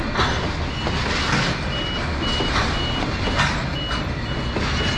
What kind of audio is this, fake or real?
real